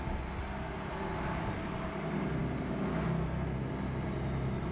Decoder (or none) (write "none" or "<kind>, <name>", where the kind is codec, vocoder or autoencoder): none